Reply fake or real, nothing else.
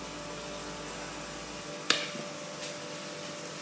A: real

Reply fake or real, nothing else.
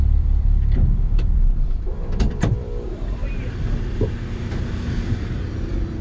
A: fake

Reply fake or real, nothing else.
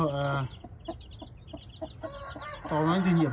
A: real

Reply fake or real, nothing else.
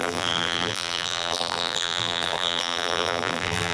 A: fake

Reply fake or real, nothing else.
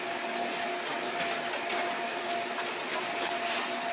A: real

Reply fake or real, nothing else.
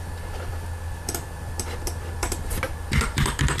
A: fake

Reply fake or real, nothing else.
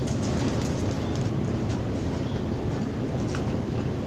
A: real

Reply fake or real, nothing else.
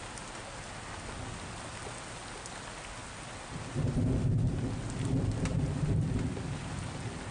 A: real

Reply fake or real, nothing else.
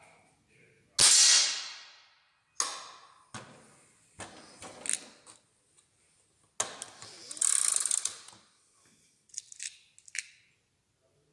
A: real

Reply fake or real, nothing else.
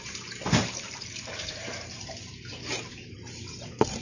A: fake